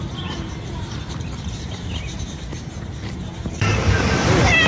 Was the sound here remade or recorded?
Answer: remade